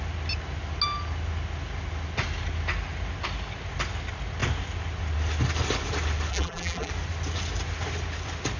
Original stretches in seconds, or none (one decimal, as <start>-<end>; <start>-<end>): 0.0-6.3; 6.9-8.6

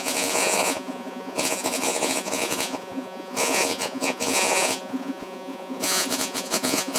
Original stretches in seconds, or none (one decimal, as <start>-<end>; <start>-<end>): none